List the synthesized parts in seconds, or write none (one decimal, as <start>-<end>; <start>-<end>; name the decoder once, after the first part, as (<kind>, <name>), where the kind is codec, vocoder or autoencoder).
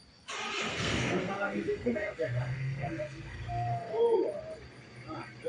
0.7-4.0 (codec, SNAC)